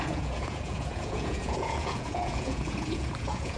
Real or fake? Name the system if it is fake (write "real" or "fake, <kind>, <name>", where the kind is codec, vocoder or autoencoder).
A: fake, vocoder, Vocos